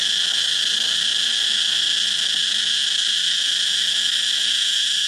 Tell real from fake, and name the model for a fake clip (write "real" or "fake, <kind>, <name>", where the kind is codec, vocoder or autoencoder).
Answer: fake, autoencoder, DAC-VAE